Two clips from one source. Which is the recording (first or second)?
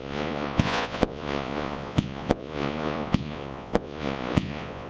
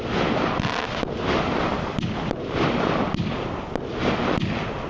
second